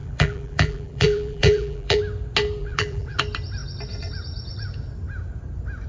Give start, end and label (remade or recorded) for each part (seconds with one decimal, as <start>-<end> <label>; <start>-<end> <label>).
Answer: 0.0-2.0 remade; 2.0-2.6 recorded; 2.6-3.2 remade; 3.2-5.9 recorded